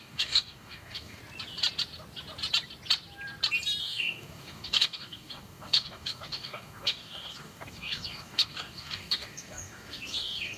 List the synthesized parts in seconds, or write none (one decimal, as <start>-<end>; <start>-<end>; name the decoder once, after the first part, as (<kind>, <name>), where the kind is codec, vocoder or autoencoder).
0.0-1.2 (codec, DAC); 3.8-10.6

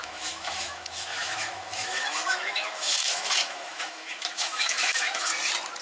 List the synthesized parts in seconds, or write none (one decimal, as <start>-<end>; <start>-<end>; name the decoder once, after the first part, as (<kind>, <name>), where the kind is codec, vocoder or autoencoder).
0.0-5.3 (autoencoder, DAC-VAE)